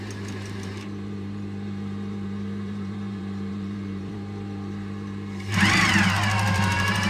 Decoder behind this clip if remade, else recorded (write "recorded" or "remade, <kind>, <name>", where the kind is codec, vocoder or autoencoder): remade, vocoder, BigVGAN v2